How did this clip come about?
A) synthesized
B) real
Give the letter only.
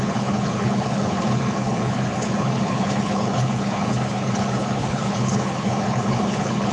A